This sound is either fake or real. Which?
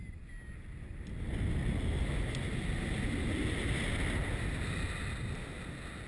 real